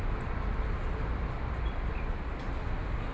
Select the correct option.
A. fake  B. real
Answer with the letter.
B